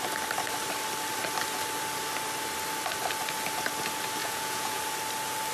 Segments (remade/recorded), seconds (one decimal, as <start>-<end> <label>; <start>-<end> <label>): 0.0-4.2 recorded; 4.2-4.8 remade; 4.8-5.5 recorded